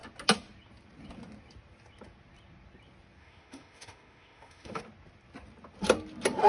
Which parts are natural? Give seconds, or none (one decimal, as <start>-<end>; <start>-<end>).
0.0-3.2; 4.8-6.5